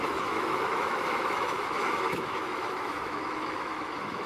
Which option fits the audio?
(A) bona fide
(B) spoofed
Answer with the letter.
B